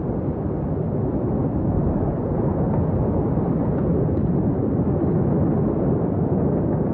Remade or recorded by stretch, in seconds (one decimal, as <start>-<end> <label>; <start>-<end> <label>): 0.0-6.9 recorded